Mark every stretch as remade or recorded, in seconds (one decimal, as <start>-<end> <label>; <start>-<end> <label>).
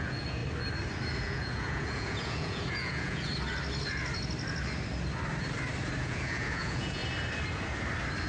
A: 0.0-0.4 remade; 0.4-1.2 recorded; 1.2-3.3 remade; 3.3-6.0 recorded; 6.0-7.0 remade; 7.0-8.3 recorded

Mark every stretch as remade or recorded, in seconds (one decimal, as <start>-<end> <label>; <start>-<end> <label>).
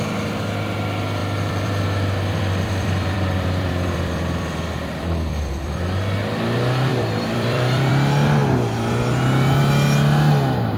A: 0.0-1.2 recorded; 1.2-5.8 remade; 5.8-6.9 recorded; 6.9-7.9 remade; 7.9-10.8 recorded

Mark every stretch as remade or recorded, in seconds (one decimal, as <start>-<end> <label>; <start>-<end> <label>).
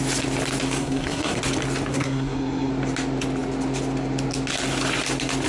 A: 0.0-0.8 recorded; 0.8-1.4 remade; 1.4-1.9 recorded; 1.9-2.7 remade; 2.7-5.5 recorded